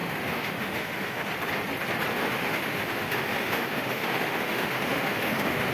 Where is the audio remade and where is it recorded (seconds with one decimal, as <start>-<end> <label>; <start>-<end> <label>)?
0.0-1.3 remade; 1.3-2.1 recorded; 2.1-5.7 remade